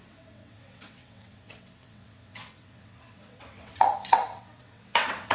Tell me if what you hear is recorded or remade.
remade